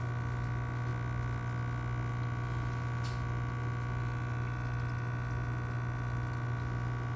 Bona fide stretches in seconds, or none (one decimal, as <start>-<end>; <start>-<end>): 0.0-7.2